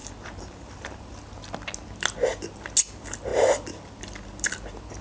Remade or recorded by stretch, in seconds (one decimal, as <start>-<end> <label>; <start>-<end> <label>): 0.0-5.0 recorded